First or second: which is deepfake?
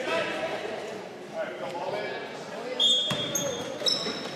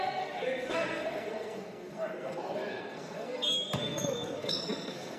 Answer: second